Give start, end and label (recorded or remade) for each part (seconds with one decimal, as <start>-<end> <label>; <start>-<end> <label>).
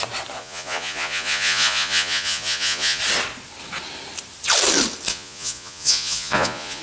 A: 0.0-0.4 recorded; 0.4-3.0 remade; 3.0-5.1 recorded; 5.1-6.8 remade